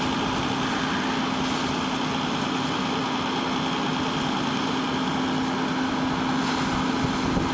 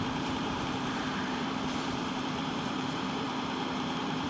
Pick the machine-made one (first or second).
second